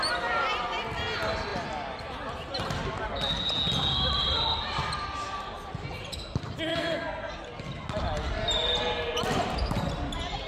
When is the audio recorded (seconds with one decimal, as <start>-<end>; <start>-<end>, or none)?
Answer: 0.0-6.7; 7.3-10.5